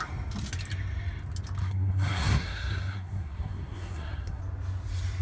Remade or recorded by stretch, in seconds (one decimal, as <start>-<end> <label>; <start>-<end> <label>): 0.0-1.6 recorded; 1.6-4.4 remade; 4.4-5.2 recorded